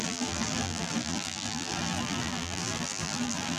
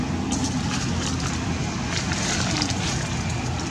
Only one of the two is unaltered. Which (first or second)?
second